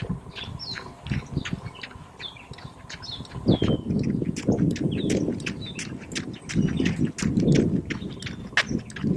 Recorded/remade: recorded